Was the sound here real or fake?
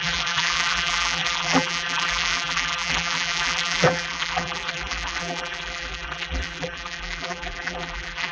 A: fake